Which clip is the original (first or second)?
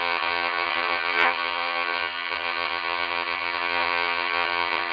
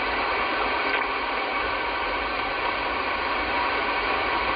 second